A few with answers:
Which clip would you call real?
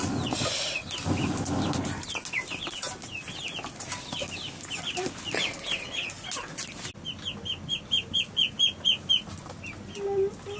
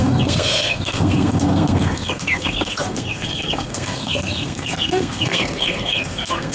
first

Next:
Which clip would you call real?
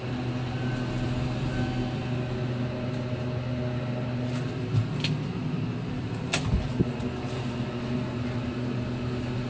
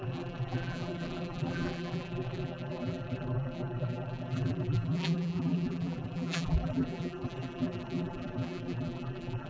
first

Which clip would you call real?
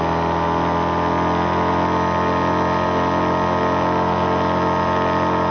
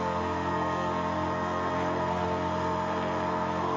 first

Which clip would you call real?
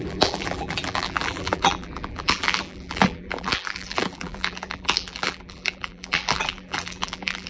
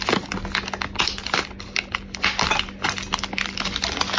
second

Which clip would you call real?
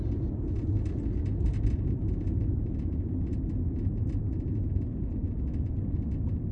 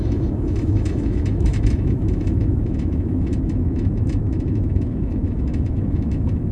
first